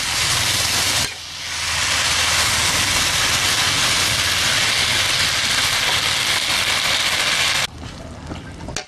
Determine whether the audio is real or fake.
real